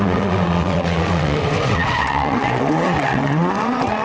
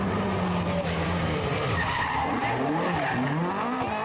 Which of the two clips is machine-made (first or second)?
first